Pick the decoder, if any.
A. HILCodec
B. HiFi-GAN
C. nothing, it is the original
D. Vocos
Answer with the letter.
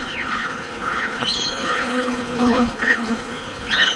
A